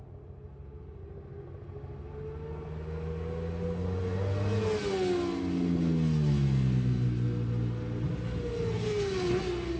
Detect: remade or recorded recorded